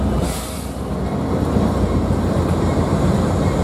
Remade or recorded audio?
remade